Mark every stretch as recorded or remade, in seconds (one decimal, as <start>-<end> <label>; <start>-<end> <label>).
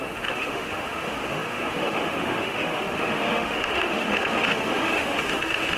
0.0-5.8 remade